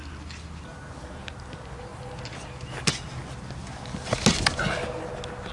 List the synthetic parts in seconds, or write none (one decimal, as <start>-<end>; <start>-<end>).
none